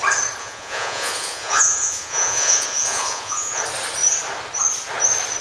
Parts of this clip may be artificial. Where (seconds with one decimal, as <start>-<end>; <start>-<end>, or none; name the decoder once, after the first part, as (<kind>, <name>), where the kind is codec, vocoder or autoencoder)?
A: 0.4-3.6 (vocoder, Vocos)